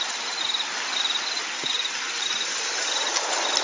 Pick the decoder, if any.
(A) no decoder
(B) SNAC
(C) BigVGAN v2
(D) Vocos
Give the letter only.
A